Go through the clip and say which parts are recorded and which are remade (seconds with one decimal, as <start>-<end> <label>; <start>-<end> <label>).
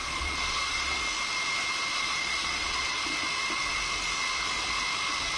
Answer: 0.0-1.0 remade; 1.0-1.9 recorded; 1.9-3.0 remade; 3.0-5.4 recorded